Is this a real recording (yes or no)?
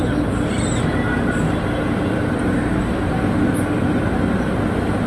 yes